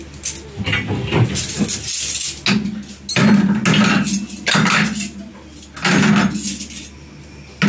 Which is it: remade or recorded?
recorded